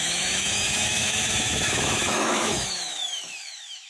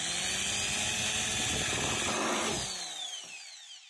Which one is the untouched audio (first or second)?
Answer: second